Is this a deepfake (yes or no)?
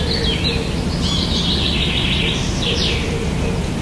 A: no